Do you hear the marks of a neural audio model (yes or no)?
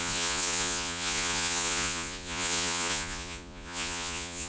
yes